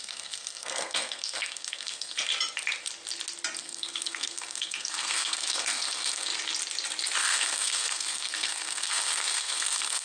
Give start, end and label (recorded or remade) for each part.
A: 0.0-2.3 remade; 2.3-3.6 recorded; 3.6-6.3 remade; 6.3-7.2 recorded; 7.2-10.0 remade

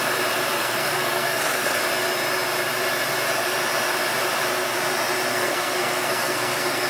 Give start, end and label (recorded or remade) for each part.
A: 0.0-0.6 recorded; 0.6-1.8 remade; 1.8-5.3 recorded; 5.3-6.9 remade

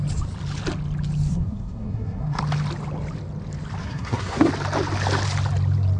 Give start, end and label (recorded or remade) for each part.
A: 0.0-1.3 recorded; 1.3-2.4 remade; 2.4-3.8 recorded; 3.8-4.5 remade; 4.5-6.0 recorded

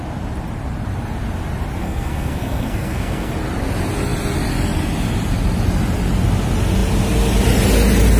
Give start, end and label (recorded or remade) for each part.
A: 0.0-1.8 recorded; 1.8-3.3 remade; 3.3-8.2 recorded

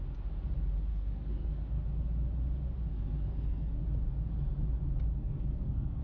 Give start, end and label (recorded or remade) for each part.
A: 0.0-0.9 recorded; 0.9-1.6 remade; 1.6-2.9 recorded; 2.9-3.8 remade; 3.8-5.1 recorded; 5.1-6.0 remade

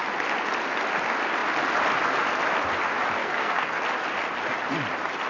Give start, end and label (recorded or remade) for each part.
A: 0.0-3.2 recorded; 3.2-3.8 remade; 3.8-5.3 recorded

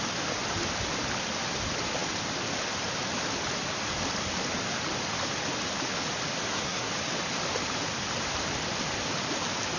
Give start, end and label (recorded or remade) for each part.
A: 0.0-6.4 recorded; 6.4-6.9 remade; 6.9-9.8 recorded

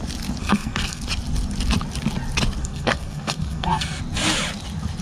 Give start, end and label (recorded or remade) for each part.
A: 0.0-0.4 recorded; 0.4-1.0 remade; 1.0-2.6 recorded; 2.6-4.0 remade; 4.0-5.0 recorded